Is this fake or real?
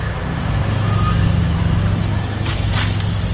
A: real